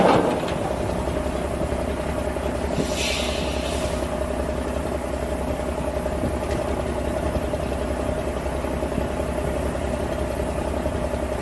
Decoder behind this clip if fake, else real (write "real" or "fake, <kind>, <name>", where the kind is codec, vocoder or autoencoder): real